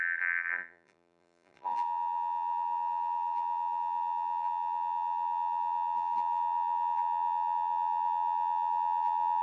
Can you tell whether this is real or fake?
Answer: fake